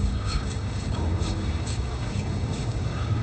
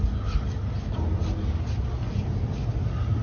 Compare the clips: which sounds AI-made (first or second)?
first